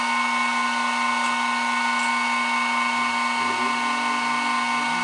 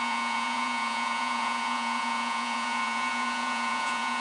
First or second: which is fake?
second